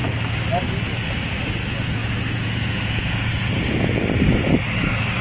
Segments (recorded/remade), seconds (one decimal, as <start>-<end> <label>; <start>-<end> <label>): 0.0-2.0 recorded; 2.0-4.0 remade; 4.0-5.2 recorded